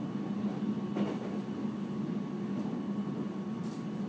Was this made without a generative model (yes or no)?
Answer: yes